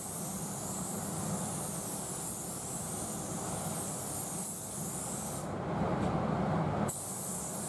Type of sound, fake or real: real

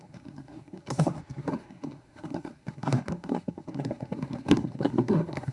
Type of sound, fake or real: fake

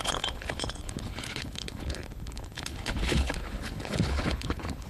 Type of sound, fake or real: fake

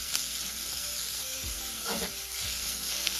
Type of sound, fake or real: fake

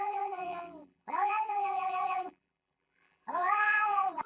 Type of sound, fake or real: fake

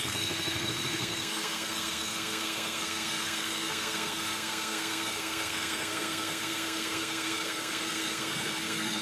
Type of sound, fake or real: fake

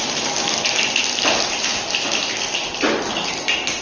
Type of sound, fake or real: real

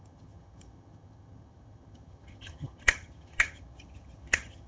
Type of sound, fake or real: fake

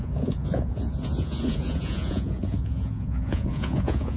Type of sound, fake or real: fake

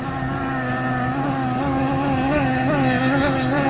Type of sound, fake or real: real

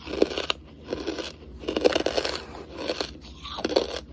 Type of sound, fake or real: real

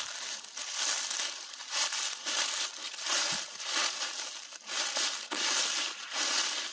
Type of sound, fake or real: real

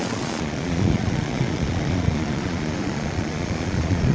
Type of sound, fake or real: fake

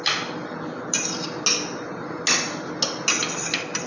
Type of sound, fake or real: real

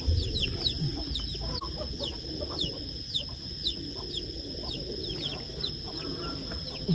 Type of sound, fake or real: real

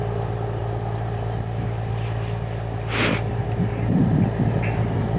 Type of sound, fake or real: real